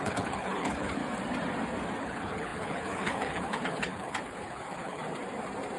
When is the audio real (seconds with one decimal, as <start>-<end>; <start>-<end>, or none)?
1.0-2.0; 5.0-5.8